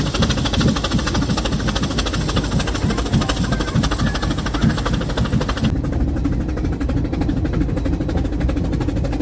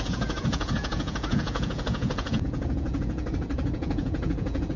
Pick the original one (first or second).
first